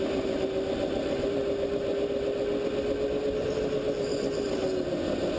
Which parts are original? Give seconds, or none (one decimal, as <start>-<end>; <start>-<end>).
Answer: 0.0-5.4